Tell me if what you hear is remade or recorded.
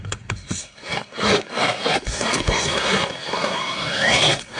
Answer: remade